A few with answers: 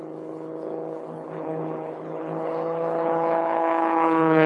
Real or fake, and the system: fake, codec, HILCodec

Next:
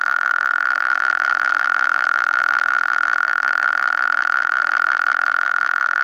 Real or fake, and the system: fake, vocoder, BigVGAN v2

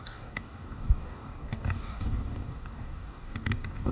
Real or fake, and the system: fake, codec, DAC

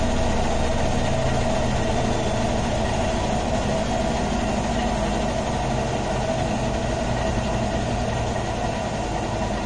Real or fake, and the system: real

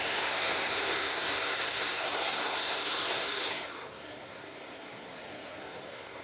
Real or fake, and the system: fake, codec, SNAC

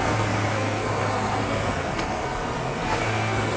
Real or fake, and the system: fake, codec, SNAC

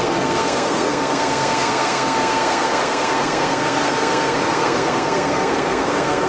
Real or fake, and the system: fake, codec, SNAC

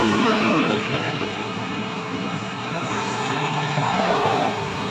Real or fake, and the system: fake, codec, SNAC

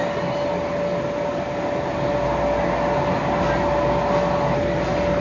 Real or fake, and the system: real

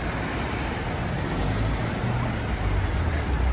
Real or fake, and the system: real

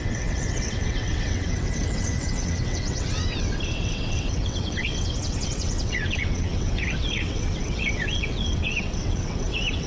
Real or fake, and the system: fake, vocoder, WaveNeXt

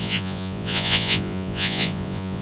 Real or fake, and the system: fake, vocoder, Vocos